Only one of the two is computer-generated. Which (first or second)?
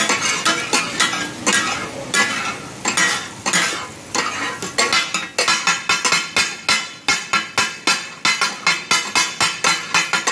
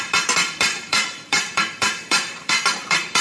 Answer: second